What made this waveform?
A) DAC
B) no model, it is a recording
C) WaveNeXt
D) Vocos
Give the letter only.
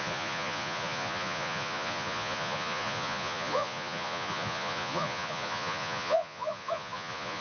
D